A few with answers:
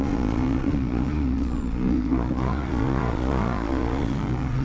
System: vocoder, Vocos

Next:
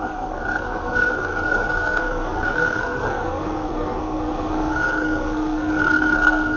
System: codec, SNAC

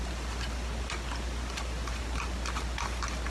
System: none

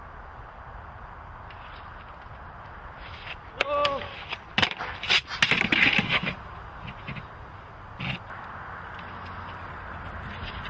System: none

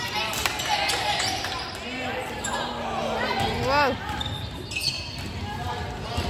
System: none